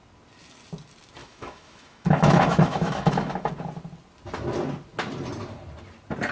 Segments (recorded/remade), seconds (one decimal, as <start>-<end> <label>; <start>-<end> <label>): 0.0-1.2 recorded; 1.2-3.5 remade; 3.5-6.3 recorded